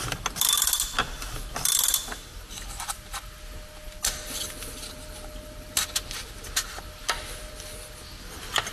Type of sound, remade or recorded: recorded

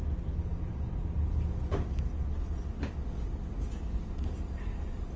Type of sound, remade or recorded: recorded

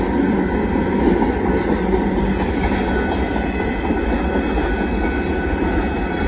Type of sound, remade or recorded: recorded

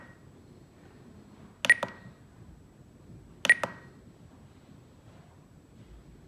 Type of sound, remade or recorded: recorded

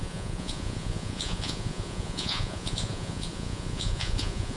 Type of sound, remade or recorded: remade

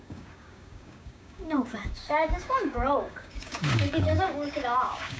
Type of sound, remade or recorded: remade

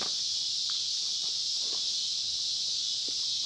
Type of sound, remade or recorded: recorded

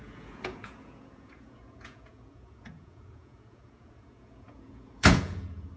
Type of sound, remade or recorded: remade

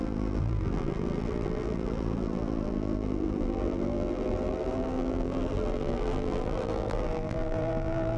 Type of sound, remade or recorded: remade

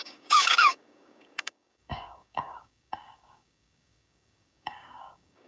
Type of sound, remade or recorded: remade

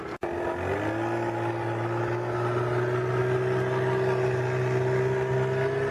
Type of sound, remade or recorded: recorded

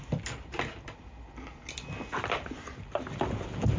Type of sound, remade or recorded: recorded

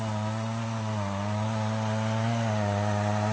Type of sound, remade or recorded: recorded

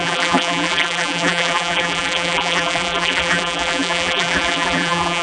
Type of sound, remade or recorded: remade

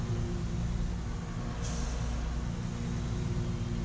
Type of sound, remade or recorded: recorded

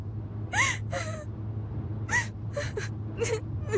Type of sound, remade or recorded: recorded